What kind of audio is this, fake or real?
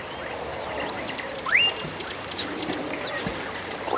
real